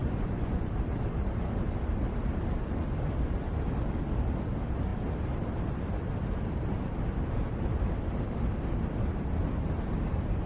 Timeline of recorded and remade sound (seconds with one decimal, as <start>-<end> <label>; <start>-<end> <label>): 0.0-0.7 remade; 0.7-10.5 recorded